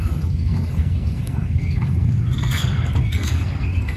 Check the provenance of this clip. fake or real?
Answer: fake